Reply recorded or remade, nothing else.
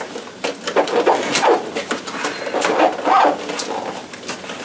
recorded